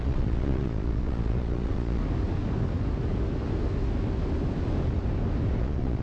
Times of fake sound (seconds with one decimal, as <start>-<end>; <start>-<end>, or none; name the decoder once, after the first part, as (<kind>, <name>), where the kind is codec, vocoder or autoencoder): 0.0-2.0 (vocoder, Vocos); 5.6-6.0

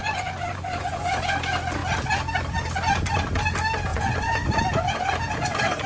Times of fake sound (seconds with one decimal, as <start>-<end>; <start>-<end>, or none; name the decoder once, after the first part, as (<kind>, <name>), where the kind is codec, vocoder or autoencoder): 0.0-1.2 (vocoder, Vocos); 3.9-4.6

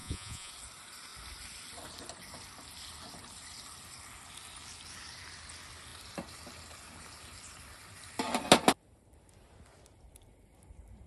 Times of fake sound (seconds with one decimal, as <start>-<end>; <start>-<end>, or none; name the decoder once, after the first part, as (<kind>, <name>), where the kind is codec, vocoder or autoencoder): 0.0-0.5 (vocoder, Vocos)